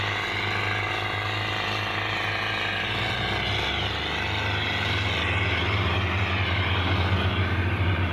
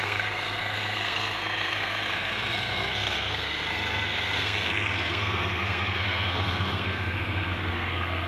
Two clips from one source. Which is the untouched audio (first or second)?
first